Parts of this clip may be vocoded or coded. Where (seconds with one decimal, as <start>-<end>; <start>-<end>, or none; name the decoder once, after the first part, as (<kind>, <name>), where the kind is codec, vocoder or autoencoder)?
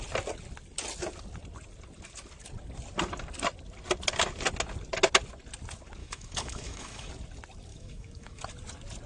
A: 6.0-7.1 (autoencoder, DAC-VAE); 7.7-8.4